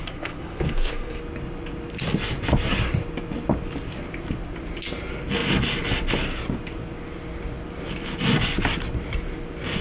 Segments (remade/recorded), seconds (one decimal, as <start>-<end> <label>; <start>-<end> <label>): 0.0-1.2 remade; 1.2-9.8 recorded

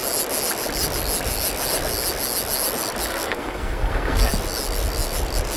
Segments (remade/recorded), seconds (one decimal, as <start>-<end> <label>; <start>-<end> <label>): 0.0-3.1 recorded; 3.1-4.3 remade; 4.3-5.6 recorded

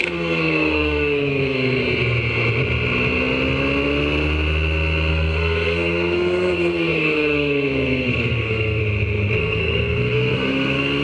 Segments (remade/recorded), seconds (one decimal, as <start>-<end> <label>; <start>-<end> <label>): 0.0-1.8 remade; 1.8-5.1 recorded; 5.1-8.8 remade; 8.8-9.4 recorded; 9.4-11.0 remade